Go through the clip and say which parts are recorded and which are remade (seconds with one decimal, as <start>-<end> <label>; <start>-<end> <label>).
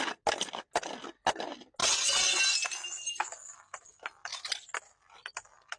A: 0.0-1.8 recorded; 1.8-2.4 remade; 2.4-5.8 recorded